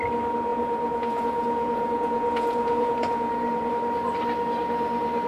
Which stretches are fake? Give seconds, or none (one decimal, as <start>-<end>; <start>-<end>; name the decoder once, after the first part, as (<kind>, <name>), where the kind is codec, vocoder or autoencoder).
0.5-3.7 (vocoder, Vocos)